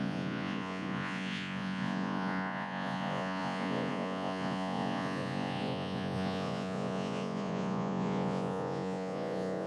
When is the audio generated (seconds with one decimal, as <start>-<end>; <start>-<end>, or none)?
0.0-9.7